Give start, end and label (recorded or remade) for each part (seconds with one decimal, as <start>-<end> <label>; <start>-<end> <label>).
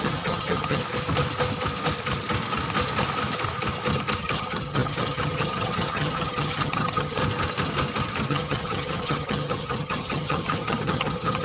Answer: 0.0-0.8 remade; 0.8-4.2 recorded; 4.2-7.2 remade; 7.2-8.3 recorded; 8.3-11.4 remade